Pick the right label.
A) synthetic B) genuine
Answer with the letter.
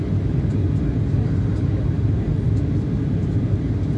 B